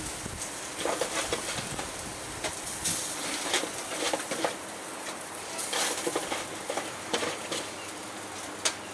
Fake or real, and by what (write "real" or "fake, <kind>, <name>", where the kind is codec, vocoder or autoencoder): real